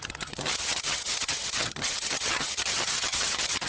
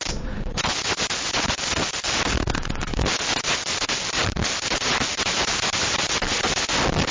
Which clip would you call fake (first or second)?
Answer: first